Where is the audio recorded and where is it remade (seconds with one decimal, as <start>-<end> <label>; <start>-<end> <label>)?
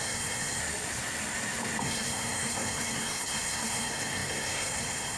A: 0.0-0.6 remade; 0.6-1.8 recorded; 1.8-5.2 remade